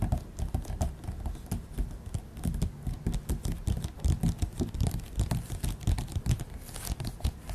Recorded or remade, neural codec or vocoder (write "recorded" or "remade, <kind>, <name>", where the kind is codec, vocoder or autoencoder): recorded